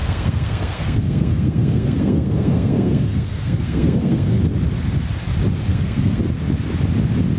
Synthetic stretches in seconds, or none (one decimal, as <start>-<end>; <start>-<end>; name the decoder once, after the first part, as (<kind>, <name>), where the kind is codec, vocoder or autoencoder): 0.0-4.4 (codec, SNAC); 5.7-6.2